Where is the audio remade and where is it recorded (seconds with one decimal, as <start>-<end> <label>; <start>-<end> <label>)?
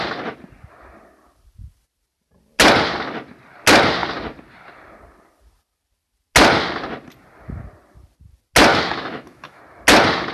0.0-8.7 recorded; 8.7-9.6 remade; 9.6-10.3 recorded